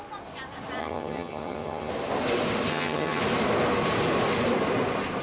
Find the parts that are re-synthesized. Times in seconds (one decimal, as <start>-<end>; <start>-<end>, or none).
0.8-1.9; 2.7-3.2